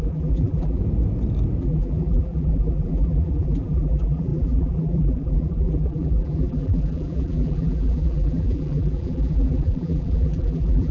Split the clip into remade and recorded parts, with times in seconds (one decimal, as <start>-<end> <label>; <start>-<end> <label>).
0.0-0.8 remade; 0.8-1.6 recorded; 1.6-10.9 remade